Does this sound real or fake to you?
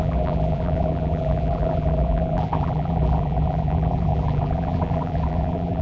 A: fake